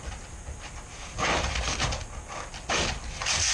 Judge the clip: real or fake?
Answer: real